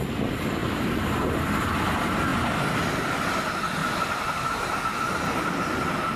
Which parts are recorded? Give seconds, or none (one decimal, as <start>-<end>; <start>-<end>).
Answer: 0.0-0.6; 1.3-3.8; 4.8-6.2